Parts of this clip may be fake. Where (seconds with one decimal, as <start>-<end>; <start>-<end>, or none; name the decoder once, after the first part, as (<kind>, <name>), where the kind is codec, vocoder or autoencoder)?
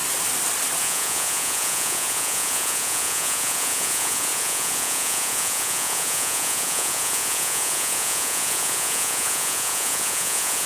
0.8-10.7 (vocoder, Vocos)